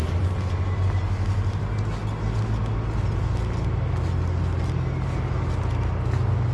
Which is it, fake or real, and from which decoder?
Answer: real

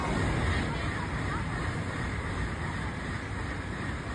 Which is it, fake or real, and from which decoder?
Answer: real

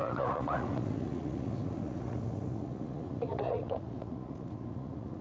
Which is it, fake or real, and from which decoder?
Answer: fake, vocoder, Vocos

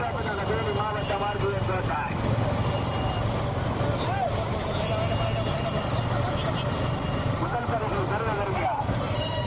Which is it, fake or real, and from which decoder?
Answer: real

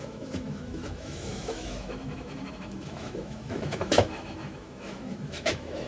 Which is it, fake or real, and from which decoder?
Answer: fake, autoencoder, DAC-VAE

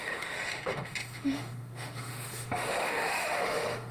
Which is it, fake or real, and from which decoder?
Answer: fake, autoencoder, DAC-VAE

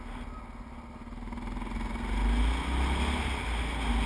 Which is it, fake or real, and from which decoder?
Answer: real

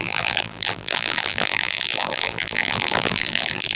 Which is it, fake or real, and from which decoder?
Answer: fake, vocoder, BigVGAN v2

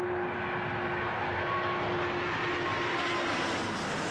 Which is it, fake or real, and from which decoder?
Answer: real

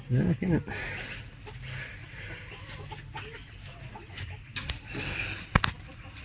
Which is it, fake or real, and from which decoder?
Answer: real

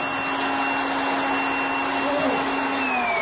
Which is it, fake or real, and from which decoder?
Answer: real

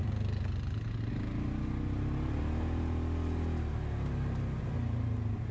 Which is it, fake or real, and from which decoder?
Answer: real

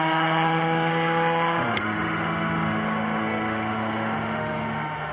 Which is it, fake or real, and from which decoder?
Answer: fake, autoencoder, DAC-VAE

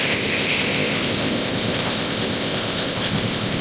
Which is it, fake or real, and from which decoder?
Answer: fake, codec, ZipCodec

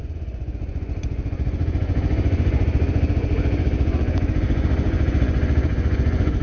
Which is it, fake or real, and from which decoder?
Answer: fake, vocoder, Vocos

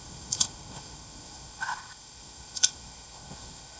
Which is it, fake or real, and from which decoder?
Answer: fake, codec, ZipCodec